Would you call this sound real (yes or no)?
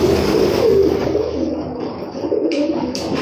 no